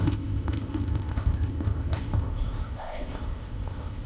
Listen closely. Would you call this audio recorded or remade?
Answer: remade